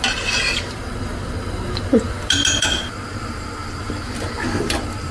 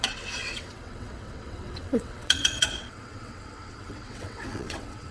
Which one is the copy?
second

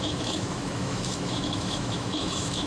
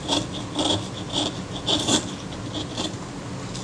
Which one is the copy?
first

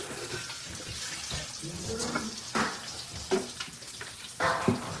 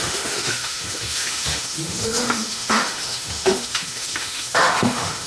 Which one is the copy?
second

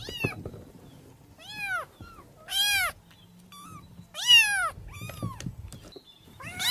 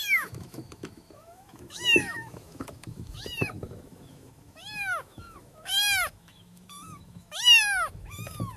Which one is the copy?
second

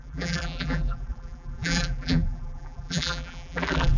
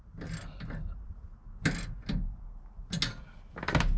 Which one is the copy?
first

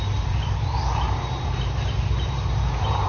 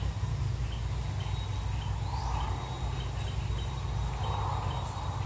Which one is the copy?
first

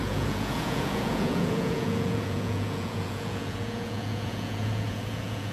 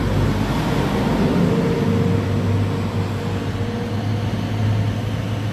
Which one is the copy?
first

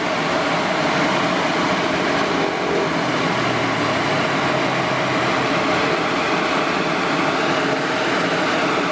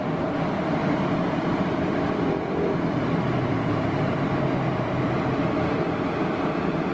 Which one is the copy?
second